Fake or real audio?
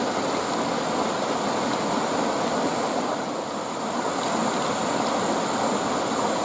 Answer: real